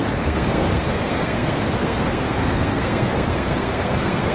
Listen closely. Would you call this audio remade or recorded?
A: remade